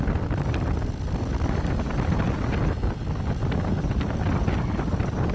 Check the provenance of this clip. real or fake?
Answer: real